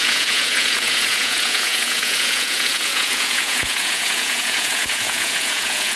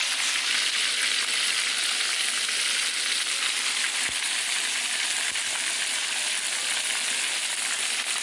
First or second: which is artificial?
first